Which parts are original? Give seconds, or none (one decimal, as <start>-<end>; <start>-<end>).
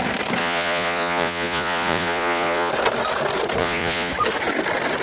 0.0-0.4; 2.7-3.6; 4.1-5.0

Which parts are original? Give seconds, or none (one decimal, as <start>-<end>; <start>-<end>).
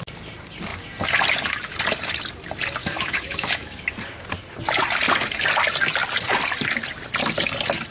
0.0-2.8; 3.8-7.9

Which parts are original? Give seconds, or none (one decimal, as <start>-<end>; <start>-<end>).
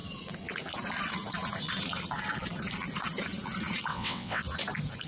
0.0-3.9; 4.4-5.1